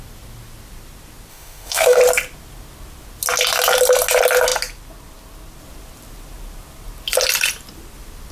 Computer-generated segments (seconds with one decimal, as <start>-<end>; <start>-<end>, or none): 1.3-2.0